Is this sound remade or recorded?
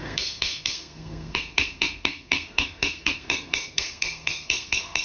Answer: remade